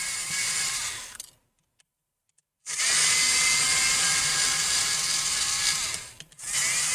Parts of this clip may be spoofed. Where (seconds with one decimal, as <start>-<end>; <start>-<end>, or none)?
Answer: none